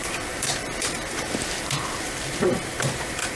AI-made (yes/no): yes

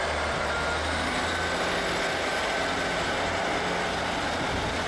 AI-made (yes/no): no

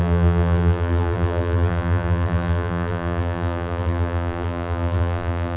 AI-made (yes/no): yes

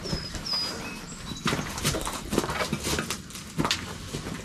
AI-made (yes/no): no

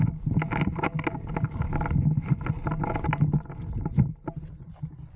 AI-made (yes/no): no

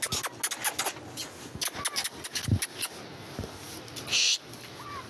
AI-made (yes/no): no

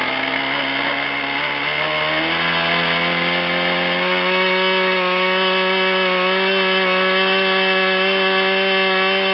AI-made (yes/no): no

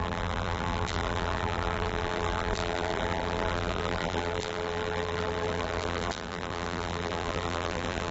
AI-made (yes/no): yes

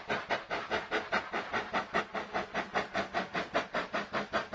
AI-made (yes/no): no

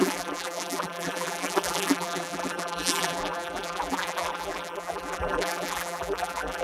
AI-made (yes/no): yes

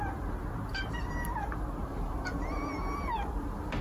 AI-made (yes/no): no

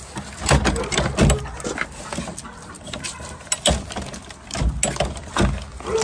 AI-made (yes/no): no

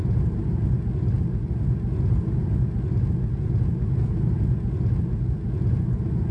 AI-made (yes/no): no